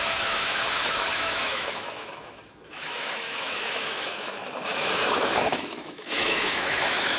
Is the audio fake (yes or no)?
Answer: yes